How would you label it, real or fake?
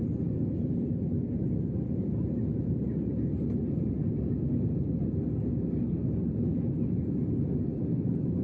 real